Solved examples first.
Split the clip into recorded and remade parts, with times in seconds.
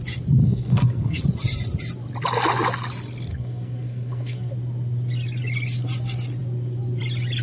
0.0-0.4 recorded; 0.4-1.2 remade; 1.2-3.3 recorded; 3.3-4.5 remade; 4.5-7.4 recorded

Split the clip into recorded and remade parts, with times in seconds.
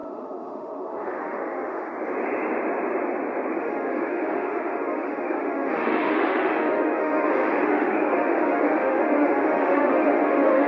0.0-1.9 remade; 1.9-3.6 recorded; 3.6-10.7 remade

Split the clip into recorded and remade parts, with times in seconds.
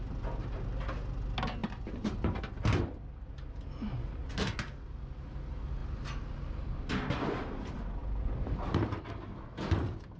0.0-1.6 recorded; 1.6-2.4 remade; 2.4-10.2 recorded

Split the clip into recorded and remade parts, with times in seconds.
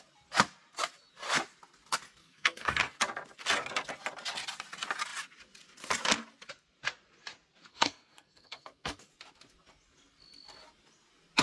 0.0-2.2 recorded; 2.2-3.0 remade; 3.0-7.7 recorded; 7.7-9.1 remade; 9.1-11.4 recorded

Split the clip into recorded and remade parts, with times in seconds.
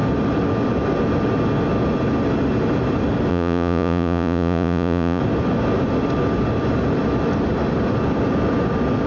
0.0-3.3 recorded; 3.3-5.2 remade; 5.2-9.1 recorded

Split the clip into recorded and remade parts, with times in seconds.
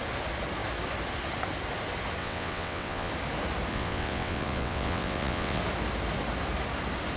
0.0-2.2 recorded; 2.2-3.1 remade; 3.1-3.7 recorded; 3.7-5.6 remade; 5.6-7.2 recorded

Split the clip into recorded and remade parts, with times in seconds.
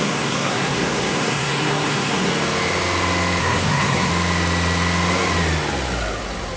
0.0-2.3 remade; 2.3-3.4 recorded; 3.4-4.1 remade; 4.1-6.6 recorded